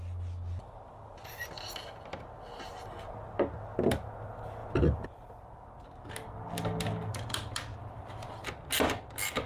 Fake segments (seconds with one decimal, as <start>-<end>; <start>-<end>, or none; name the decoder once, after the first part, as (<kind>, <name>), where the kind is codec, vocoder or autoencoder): none